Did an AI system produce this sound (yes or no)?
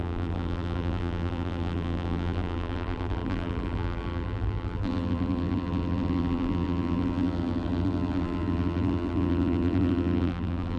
yes